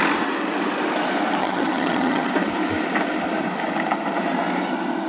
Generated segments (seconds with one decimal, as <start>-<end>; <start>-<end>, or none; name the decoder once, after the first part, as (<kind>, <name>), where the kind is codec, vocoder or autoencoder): 1.4-2.3 (vocoder, HiFi-GAN)